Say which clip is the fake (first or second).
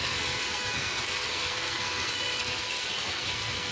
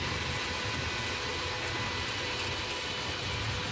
first